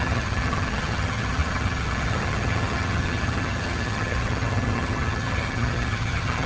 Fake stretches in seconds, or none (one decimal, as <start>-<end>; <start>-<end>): 0.0-6.5